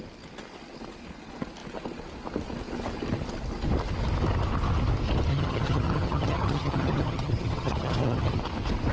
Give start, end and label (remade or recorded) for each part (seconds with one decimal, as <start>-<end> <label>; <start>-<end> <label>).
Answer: 0.0-5.3 recorded; 5.3-8.4 remade; 8.4-8.9 recorded